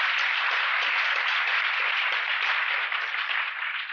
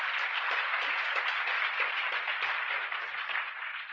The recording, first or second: second